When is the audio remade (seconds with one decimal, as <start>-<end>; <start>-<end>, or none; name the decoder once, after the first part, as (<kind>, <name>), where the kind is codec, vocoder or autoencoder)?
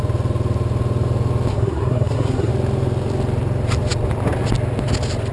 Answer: 1.5-2.5 (codec, SNAC)